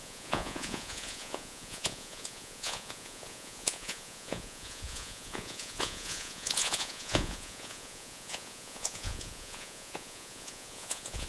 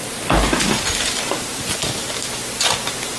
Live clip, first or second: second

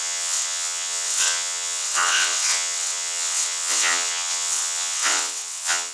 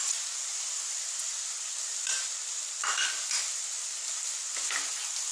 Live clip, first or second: second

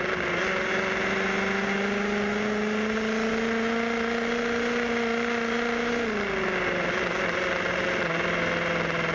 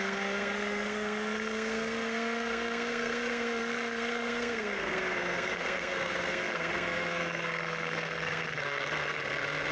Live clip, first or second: first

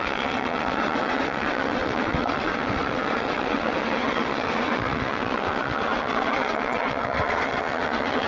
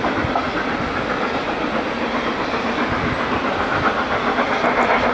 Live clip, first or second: second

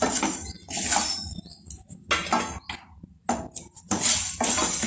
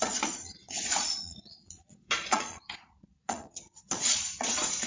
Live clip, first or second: first